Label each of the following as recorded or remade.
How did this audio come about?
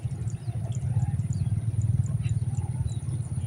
recorded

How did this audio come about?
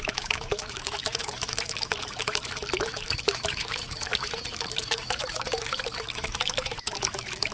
remade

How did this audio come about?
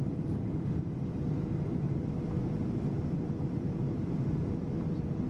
remade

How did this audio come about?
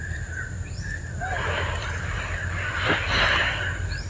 recorded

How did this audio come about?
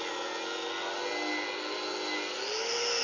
recorded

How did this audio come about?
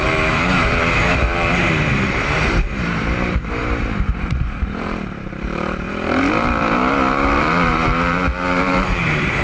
remade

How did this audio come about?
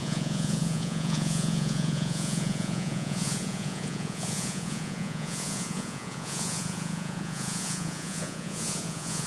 remade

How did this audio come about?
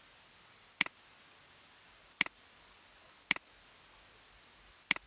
recorded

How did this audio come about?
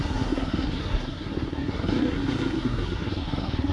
remade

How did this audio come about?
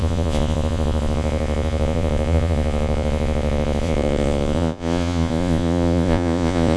remade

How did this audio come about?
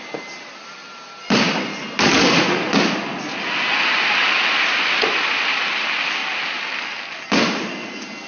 recorded